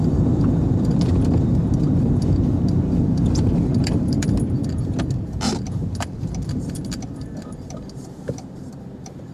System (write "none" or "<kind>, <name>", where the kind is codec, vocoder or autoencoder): vocoder, BigVGAN v2